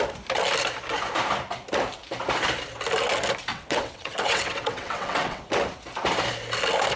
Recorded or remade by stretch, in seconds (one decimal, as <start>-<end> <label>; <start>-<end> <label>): 0.0-3.5 recorded; 3.5-5.4 remade; 5.4-7.0 recorded